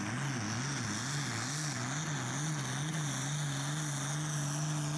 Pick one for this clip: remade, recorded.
recorded